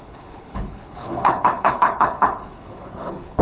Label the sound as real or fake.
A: fake